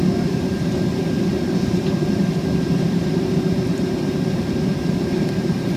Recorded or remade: remade